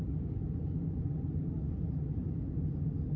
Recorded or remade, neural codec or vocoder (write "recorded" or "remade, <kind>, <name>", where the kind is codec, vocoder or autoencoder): recorded